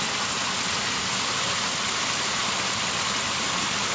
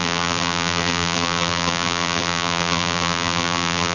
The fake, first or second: second